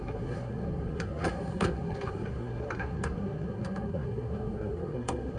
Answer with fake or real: fake